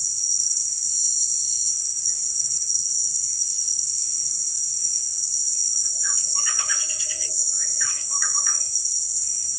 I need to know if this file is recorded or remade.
remade